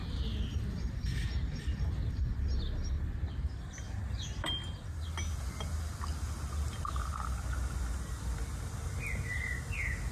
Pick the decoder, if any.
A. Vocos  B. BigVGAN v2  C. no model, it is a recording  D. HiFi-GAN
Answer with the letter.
C